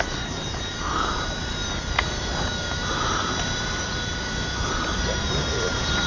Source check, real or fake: fake